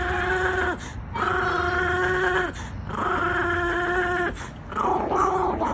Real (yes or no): yes